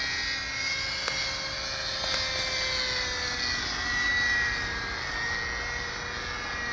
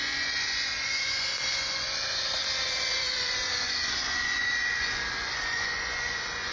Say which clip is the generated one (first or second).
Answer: second